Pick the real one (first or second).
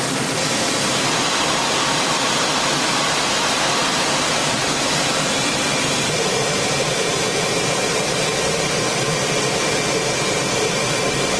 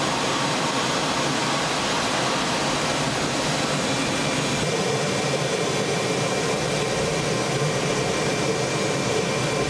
second